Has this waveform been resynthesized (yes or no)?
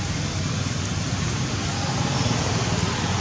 no